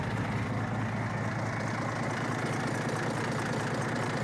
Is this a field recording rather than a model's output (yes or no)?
yes